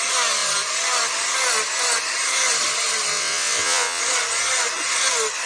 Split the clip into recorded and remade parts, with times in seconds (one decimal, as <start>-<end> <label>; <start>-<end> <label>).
0.0-3.1 recorded; 3.1-4.0 remade; 4.0-5.5 recorded